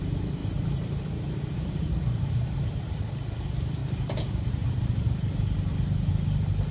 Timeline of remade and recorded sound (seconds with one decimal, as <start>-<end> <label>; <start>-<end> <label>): 0.0-0.4 recorded; 0.4-3.0 remade; 3.0-3.8 recorded; 3.8-5.1 remade; 5.1-6.7 recorded